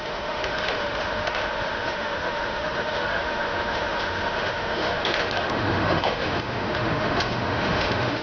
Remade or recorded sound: remade